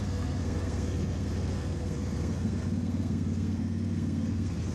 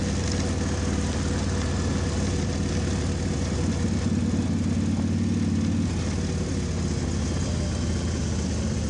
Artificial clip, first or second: first